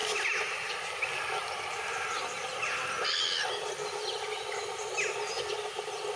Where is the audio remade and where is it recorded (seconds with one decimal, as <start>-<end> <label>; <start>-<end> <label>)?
0.0-6.2 recorded